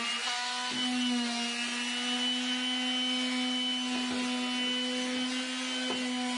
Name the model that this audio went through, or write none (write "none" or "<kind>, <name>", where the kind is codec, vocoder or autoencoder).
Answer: none